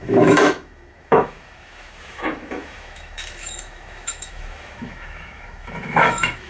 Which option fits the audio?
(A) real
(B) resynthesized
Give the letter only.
B